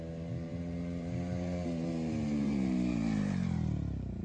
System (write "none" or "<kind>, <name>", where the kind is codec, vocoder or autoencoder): vocoder, BigVGAN v2